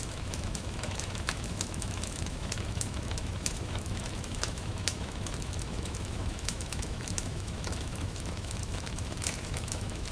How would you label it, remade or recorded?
remade